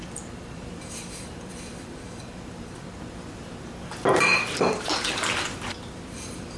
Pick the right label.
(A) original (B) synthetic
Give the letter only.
B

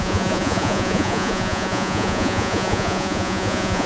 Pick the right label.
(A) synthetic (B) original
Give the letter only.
A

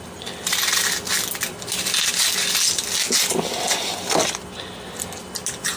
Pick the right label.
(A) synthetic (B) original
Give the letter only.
B